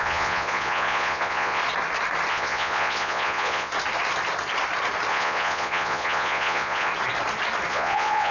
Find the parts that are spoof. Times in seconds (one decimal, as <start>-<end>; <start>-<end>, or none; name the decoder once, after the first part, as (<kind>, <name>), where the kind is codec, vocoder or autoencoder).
0.0-1.6 (vocoder, Vocos); 2.3-3.7; 5.1-6.9; 7.7-8.3